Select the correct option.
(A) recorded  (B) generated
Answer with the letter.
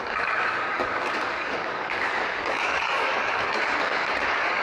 B